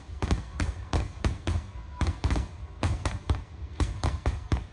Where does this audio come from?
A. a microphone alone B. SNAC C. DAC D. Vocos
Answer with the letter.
B